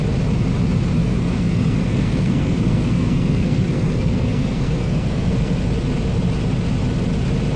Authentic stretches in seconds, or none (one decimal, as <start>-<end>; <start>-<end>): 0.0-1.0; 5.6-7.6